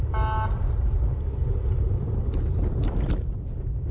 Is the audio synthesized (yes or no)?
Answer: no